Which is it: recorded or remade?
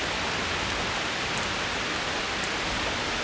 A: recorded